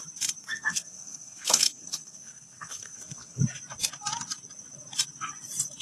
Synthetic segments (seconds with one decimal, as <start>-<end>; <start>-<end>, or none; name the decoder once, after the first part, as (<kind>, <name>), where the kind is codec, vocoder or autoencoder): 0.4-3.4 (codec, SNAC)